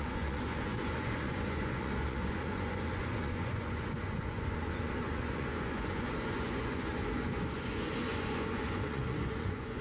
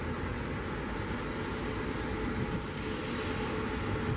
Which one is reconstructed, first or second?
first